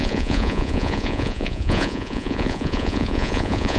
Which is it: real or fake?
fake